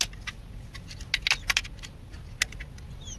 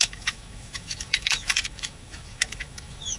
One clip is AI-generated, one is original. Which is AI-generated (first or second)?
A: second